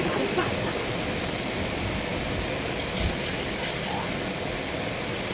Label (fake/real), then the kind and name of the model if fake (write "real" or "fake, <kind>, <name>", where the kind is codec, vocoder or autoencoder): real